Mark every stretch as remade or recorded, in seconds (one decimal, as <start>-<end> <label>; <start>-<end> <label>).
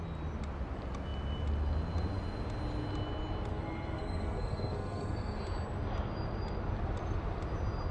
0.0-3.5 recorded; 3.5-5.4 remade; 5.4-7.9 recorded